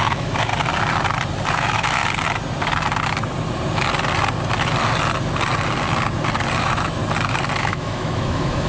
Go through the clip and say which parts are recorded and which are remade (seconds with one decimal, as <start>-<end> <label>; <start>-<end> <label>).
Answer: 0.0-0.5 remade; 0.5-1.5 recorded; 1.5-2.0 remade; 2.0-6.6 recorded; 6.6-7.0 remade; 7.0-7.6 recorded; 7.6-8.7 remade